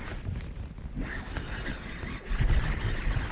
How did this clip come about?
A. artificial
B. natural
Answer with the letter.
B